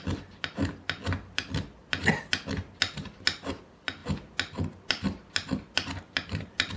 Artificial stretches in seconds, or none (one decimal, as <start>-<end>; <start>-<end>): none

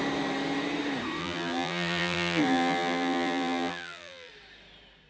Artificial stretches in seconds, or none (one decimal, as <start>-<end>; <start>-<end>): 1.2-4.3

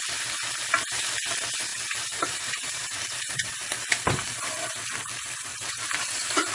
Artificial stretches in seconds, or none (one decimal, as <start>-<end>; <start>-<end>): 1.7-3.5; 5.5-6.5

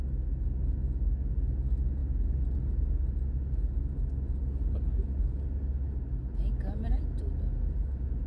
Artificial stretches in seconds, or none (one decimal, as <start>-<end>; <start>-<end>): none